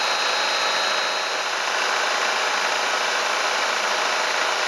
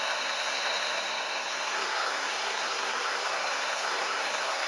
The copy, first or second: second